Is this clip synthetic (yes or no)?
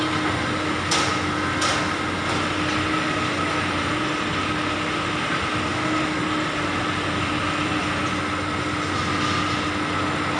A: no